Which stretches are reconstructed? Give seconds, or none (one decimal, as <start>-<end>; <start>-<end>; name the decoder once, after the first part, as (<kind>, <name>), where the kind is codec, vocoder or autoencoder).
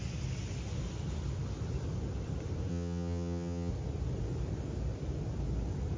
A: 2.7-3.7 (vocoder, HiFi-GAN)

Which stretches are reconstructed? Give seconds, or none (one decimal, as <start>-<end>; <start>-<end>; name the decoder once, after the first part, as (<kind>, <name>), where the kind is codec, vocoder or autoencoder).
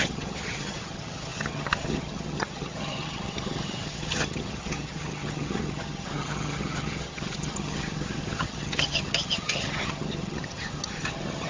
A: 0.0-11.5 (vocoder, HiFi-GAN)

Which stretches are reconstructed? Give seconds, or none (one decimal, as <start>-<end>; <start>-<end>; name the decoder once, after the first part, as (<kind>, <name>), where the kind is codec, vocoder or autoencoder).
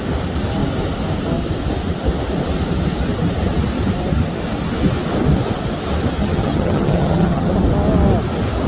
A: 6.2-7.5 (vocoder, HiFi-GAN)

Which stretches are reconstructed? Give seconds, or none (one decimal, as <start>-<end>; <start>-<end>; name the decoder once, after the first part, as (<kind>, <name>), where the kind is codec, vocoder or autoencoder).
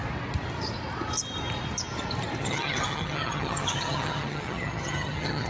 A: 2.4-5.5 (vocoder, HiFi-GAN)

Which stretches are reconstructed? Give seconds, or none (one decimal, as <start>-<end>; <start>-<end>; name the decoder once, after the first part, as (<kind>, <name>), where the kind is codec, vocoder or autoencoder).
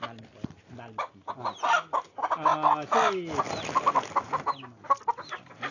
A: none